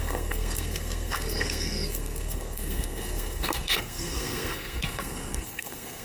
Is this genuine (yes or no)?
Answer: no